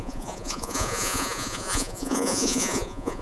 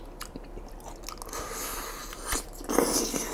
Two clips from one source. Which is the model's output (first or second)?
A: first